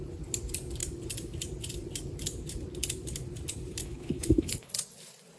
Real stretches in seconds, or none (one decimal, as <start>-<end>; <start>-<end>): 0.0-3.8; 4.7-5.4